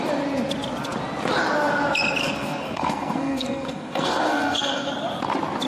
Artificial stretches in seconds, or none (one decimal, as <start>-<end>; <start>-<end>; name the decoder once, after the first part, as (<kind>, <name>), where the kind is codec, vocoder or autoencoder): 2.2-4.9 (codec, SNAC)